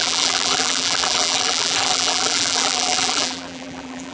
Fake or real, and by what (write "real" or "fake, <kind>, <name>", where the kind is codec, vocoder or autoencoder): fake, vocoder, BigVGAN v2